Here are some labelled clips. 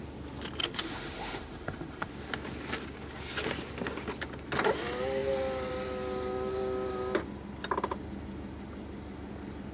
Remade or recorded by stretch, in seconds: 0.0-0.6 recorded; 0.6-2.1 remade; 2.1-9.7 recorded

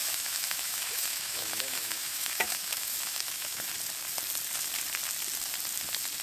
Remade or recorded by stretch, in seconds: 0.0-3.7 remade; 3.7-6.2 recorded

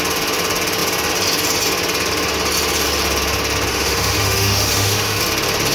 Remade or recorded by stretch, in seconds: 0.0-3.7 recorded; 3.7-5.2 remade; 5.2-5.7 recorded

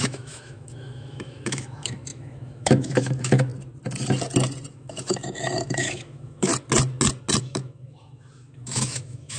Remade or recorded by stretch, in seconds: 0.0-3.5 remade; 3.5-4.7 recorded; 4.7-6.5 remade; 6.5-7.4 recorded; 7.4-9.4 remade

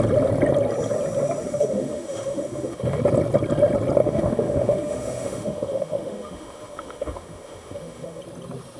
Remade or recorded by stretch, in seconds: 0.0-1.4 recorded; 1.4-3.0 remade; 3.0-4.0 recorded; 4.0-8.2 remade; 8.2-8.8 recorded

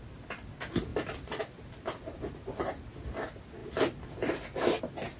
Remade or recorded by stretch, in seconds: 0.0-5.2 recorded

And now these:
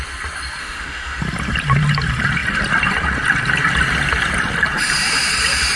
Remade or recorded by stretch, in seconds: 0.0-0.6 recorded; 0.6-1.2 remade; 1.2-5.8 recorded

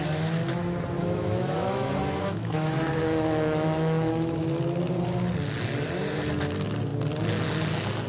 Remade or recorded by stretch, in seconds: 0.0-1.0 recorded; 1.0-4.6 remade; 4.6-8.1 recorded